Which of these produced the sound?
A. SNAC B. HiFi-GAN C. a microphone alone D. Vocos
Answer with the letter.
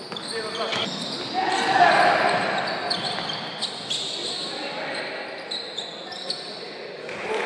C